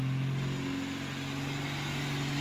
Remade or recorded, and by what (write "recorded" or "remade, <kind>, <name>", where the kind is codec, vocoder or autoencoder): recorded